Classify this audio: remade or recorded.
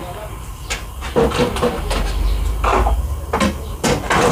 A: recorded